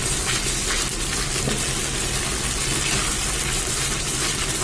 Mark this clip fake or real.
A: real